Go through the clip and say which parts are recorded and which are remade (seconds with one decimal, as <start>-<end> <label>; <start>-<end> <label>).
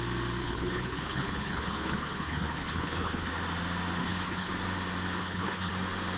0.0-0.4 recorded; 0.4-3.3 remade; 3.3-4.0 recorded; 4.0-4.5 remade; 4.5-5.2 recorded; 5.2-5.7 remade; 5.7-6.2 recorded